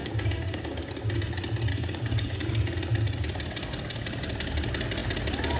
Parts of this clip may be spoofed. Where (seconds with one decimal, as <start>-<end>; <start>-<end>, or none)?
0.0-0.9; 1.7-2.5